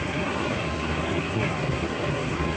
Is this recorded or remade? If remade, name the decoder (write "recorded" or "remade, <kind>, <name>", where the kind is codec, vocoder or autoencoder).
remade, codec, SNAC